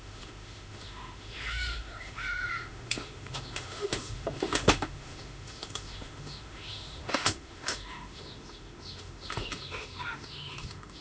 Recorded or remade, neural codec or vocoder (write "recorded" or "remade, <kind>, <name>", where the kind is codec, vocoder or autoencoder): remade, autoencoder, DAC-VAE